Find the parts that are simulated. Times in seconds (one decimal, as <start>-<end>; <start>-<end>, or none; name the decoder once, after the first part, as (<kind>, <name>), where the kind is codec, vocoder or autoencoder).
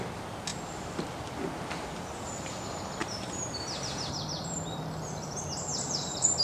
0.5-1.0 (vocoder, BigVGAN v2); 3.0-4.8; 5.7-6.4